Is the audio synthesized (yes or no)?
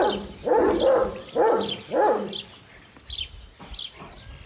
no